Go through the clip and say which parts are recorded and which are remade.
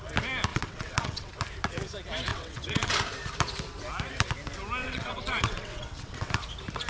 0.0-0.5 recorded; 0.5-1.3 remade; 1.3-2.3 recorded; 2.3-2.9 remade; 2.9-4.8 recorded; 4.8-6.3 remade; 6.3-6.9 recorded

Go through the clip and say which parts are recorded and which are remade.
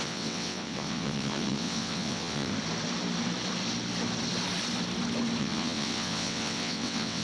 0.0-2.5 remade; 2.5-5.4 recorded; 5.4-7.2 remade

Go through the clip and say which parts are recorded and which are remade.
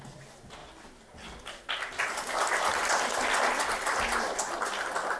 0.0-5.2 recorded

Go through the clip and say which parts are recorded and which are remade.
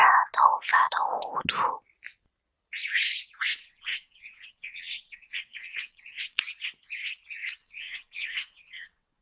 0.0-0.7 recorded; 0.7-1.3 remade; 1.3-3.5 recorded; 3.5-6.4 remade; 6.4-7.6 recorded; 7.6-9.2 remade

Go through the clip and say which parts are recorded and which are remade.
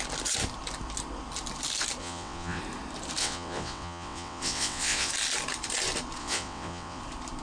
0.0-2.0 recorded; 2.0-2.6 remade; 2.6-3.2 recorded; 3.2-5.1 remade; 5.1-6.2 recorded; 6.2-7.0 remade; 7.0-7.4 recorded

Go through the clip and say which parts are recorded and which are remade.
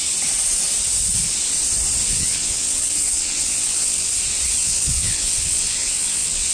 0.0-2.1 recorded; 2.1-4.1 remade; 4.1-4.6 recorded; 4.6-6.5 remade